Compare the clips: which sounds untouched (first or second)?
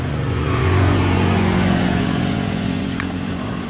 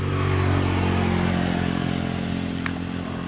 second